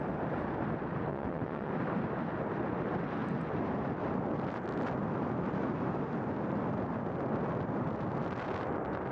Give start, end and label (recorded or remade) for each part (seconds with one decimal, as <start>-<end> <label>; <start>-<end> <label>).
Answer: 0.0-1.1 recorded; 1.1-1.7 remade; 1.7-9.1 recorded